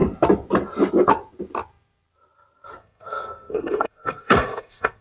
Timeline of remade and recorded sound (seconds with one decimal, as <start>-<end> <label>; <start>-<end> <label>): 0.0-2.8 recorded; 2.8-5.0 remade